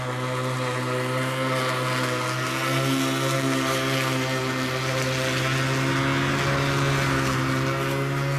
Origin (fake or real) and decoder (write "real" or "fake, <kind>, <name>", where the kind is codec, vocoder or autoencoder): real